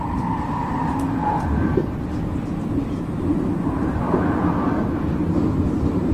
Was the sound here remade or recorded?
recorded